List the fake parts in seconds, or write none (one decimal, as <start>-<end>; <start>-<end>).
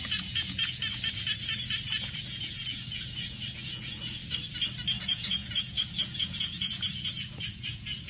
0.0-0.8; 1.9-4.2; 5.0-8.1